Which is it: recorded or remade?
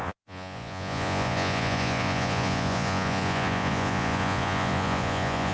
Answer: remade